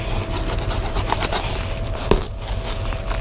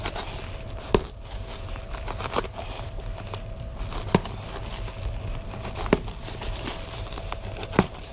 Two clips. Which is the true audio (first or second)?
first